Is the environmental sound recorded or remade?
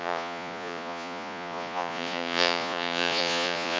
remade